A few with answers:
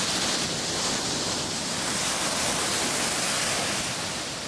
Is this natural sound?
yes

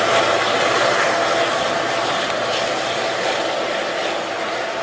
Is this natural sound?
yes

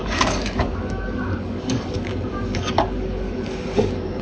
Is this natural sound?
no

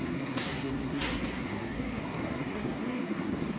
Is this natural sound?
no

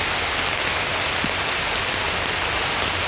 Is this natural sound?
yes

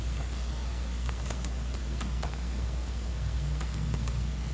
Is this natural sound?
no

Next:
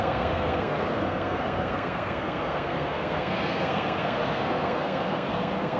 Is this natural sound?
no